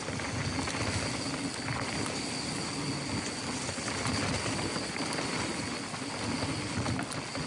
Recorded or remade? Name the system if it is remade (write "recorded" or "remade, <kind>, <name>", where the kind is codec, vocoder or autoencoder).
recorded